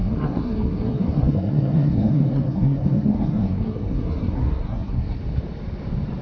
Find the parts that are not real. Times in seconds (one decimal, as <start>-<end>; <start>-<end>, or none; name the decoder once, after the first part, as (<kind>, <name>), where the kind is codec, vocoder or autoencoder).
0.0-5.2 (codec, SNAC)